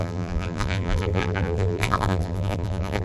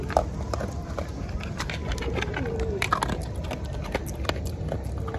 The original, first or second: second